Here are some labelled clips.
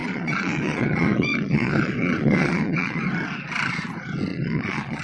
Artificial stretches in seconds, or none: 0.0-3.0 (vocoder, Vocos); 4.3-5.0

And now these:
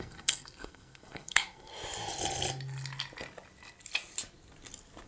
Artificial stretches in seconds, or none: 0.0-1.7 (codec, SNAC)

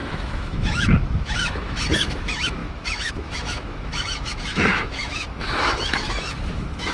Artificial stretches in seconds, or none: 0.0-6.9 (autoencoder, DAC-VAE)

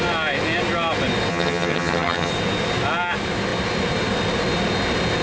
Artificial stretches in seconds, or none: 1.3-2.3 (vocoder, HiFi-GAN)

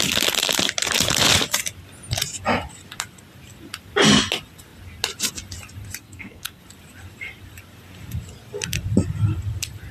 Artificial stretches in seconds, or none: 6.0-6.6 (codec, SNAC)

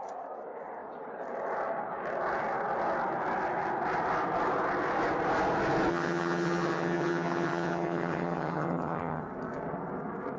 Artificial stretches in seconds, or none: 5.9-9.2 (vocoder, HiFi-GAN)